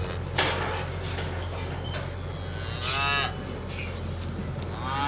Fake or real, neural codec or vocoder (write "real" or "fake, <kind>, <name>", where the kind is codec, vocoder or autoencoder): real